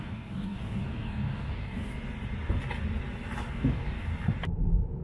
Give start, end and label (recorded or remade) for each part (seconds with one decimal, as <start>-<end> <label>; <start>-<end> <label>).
0.0-1.9 remade; 1.9-3.5 recorded; 3.5-4.1 remade; 4.1-5.0 recorded